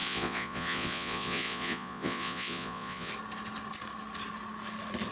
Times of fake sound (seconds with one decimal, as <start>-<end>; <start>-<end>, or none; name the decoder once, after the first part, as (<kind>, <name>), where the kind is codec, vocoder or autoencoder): 0.0-3.1 (vocoder, Vocos)